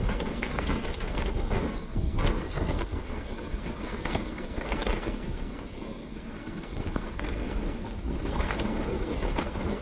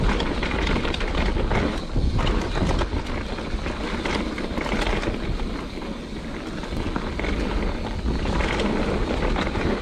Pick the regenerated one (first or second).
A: first